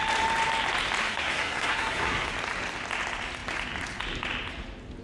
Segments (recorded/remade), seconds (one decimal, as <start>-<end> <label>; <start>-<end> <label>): 0.0-1.0 recorded; 1.0-2.3 remade; 2.3-5.0 recorded